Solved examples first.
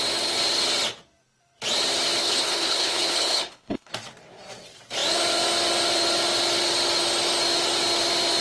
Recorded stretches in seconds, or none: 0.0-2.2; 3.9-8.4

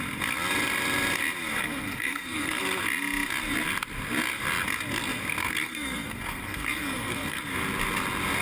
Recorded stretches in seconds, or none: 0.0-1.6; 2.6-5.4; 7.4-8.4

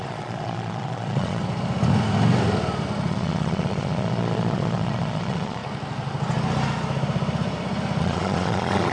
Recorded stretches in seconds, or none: 1.4-3.1; 5.6-8.0

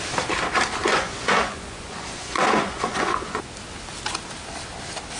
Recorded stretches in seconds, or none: 0.0-0.8; 3.4-5.2

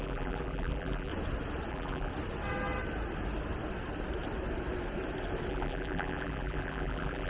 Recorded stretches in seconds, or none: 1.1-1.7; 2.1-5.5